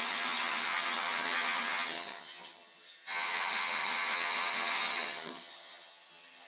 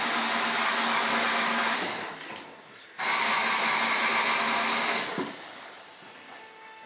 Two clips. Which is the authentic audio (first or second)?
second